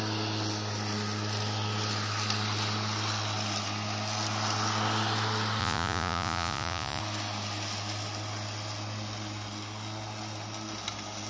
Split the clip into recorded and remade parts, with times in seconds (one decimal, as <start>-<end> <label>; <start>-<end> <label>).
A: 0.0-5.6 recorded; 5.6-7.0 remade; 7.0-11.3 recorded